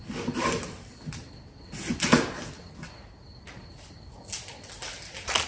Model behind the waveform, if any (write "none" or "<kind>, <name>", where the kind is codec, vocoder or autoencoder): none